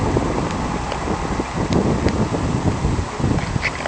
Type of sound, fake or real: real